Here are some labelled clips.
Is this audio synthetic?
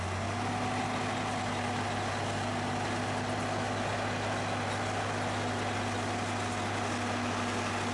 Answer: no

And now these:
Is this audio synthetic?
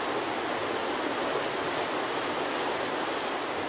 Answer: no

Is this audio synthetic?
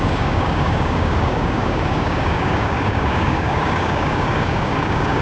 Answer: yes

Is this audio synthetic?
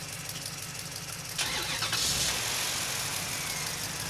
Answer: no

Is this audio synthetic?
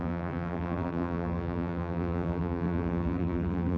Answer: yes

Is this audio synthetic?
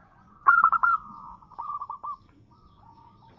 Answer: yes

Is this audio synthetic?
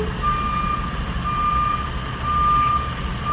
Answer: no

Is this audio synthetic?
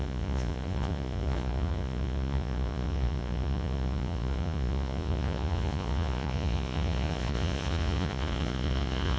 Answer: yes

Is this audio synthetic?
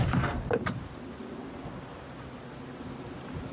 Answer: no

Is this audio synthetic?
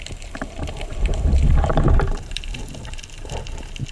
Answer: yes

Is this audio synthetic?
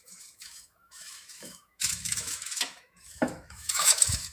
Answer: yes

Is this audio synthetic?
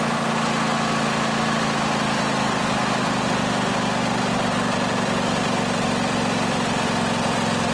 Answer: no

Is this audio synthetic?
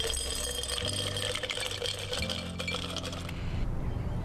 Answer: no